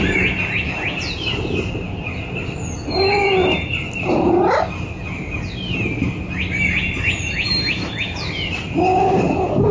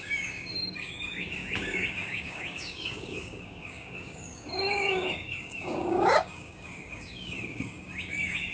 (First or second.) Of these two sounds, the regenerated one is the second